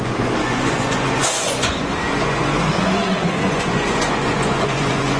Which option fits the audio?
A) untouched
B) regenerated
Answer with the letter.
B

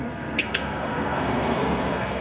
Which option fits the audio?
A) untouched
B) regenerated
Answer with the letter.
B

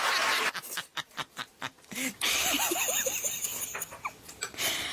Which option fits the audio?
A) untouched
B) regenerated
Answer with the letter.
B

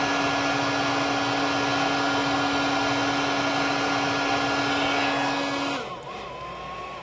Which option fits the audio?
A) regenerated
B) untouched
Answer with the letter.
B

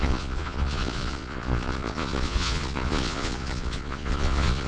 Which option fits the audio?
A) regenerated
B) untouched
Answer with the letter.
A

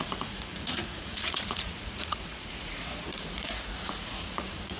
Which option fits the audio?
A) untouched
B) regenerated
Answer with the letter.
B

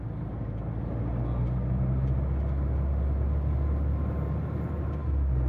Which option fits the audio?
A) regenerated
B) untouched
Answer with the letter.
B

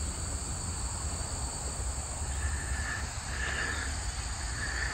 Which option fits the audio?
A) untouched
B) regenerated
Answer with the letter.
A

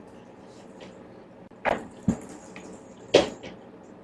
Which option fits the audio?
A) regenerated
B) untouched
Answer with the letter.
B